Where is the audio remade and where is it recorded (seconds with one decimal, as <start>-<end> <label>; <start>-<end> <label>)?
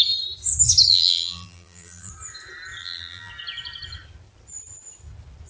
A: 0.0-0.9 recorded; 0.9-2.1 remade; 2.1-2.8 recorded; 2.8-3.3 remade; 3.3-5.5 recorded